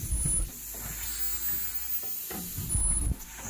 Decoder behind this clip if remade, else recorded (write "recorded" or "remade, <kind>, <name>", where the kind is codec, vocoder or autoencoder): recorded